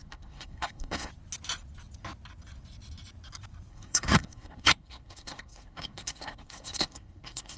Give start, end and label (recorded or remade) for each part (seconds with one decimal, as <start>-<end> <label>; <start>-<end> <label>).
0.0-1.1 remade; 1.1-3.7 recorded; 3.7-7.6 remade